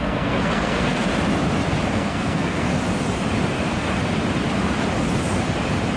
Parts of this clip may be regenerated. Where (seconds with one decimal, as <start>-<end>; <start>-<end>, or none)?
0.0-1.1; 1.9-2.7